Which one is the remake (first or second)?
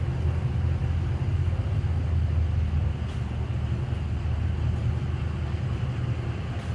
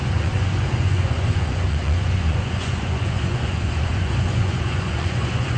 second